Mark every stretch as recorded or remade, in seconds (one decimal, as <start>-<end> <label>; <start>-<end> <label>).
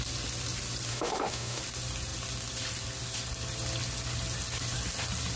0.0-0.9 recorded; 0.9-1.6 remade; 1.6-5.4 recorded